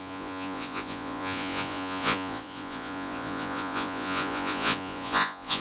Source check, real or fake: fake